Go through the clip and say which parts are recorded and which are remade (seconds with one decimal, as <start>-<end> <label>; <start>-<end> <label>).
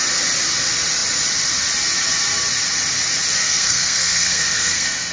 0.0-3.4 recorded; 3.4-5.1 remade